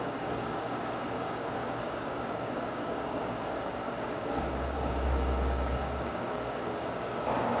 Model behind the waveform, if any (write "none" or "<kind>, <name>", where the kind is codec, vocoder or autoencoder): codec, DAC